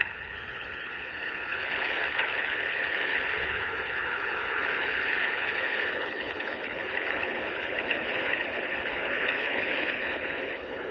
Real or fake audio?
fake